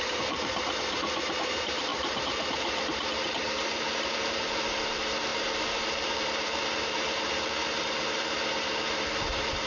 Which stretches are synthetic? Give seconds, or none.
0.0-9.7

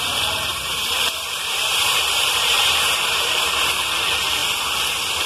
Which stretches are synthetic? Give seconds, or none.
0.5-3.7

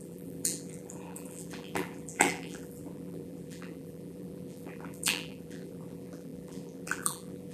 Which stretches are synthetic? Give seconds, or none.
0.0-7.5

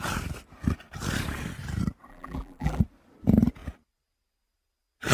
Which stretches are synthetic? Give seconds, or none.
2.1-2.8

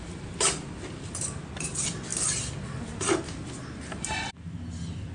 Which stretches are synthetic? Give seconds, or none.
none